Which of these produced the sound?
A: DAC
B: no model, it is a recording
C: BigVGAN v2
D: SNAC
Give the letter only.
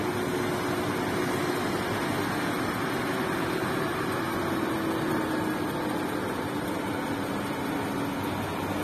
B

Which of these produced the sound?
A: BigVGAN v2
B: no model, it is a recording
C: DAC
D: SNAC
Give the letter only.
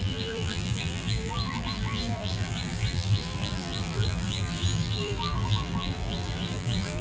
A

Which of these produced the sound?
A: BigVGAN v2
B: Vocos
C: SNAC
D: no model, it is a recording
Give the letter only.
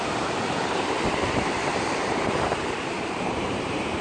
A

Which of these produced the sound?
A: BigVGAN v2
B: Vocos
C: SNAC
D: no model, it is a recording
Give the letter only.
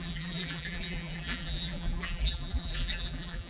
A